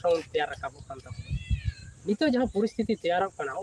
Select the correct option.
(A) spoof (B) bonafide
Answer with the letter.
B